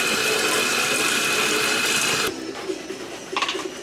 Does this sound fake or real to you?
real